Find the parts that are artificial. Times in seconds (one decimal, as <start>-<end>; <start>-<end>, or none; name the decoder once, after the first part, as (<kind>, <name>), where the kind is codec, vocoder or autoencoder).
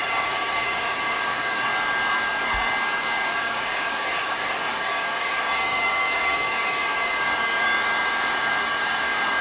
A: 0.0-1.7 (codec, DAC); 3.3-9.4